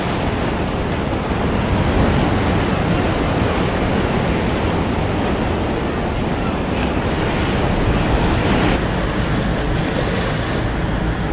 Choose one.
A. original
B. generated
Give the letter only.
A